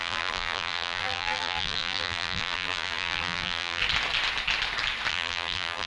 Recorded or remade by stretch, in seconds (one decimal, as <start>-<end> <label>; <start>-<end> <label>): 0.0-3.8 remade; 3.8-5.1 recorded; 5.1-5.9 remade